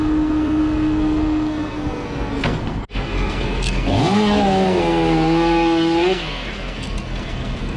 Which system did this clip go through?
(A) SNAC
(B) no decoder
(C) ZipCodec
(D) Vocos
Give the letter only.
A